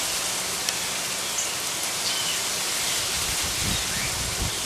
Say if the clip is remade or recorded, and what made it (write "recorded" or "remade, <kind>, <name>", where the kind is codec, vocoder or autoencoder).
recorded